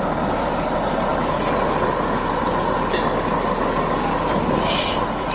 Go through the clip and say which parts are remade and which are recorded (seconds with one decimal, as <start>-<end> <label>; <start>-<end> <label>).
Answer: 0.0-5.3 recorded